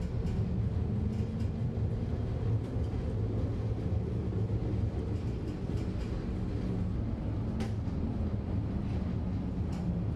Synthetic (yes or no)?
no